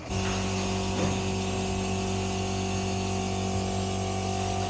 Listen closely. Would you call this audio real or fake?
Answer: real